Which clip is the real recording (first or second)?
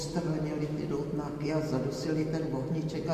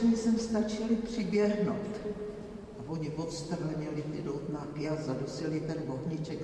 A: first